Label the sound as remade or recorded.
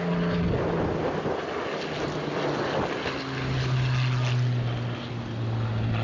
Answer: recorded